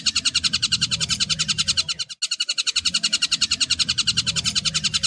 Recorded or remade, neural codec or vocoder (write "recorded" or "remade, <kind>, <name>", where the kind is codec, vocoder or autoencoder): recorded